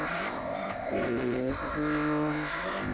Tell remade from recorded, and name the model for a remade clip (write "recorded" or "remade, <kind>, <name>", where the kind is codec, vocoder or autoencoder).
remade, codec, ZipCodec